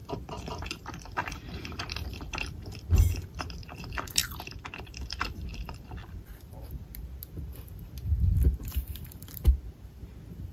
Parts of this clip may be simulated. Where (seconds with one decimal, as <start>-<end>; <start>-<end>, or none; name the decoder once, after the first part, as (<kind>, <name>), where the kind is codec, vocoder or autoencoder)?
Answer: 0.6-6.3 (vocoder, BigVGAN v2); 8.3-10.5